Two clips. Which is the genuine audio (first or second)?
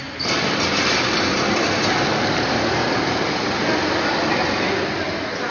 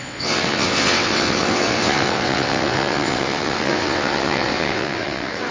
first